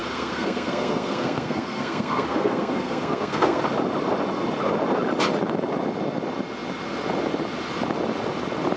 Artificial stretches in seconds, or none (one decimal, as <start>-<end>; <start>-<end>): 0.0-3.6